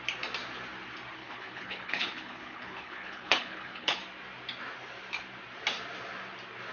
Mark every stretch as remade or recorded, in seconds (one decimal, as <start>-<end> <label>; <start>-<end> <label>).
0.0-1.2 recorded; 1.2-4.0 remade; 4.0-6.7 recorded